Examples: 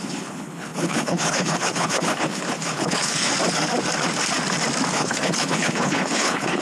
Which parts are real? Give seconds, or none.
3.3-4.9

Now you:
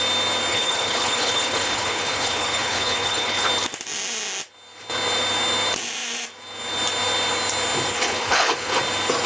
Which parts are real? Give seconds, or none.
0.0-0.5; 3.5-7.9; 8.8-9.3